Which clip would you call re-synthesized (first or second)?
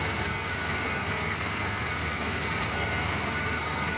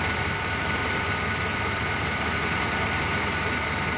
first